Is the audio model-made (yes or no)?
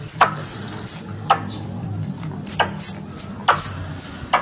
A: no